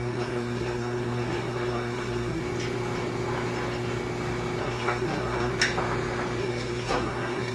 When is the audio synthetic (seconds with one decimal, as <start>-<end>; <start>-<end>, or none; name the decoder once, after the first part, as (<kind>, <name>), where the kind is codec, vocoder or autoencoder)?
0.0-2.4 (codec, SNAC); 4.6-5.5; 6.4-7.5